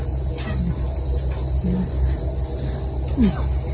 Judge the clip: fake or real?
real